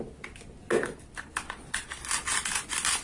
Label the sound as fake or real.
real